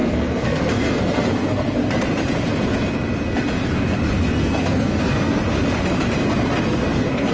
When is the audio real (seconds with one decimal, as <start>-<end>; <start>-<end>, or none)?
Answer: 1.8-4.3; 5.4-6.7